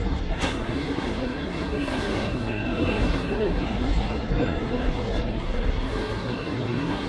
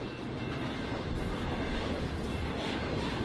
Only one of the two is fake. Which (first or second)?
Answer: first